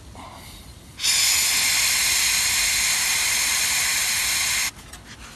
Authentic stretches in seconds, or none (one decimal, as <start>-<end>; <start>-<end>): 0.0-5.4